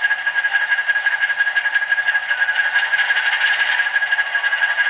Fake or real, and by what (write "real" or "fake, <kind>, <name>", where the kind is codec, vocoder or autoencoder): real